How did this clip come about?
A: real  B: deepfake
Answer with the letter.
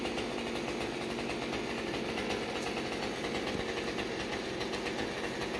A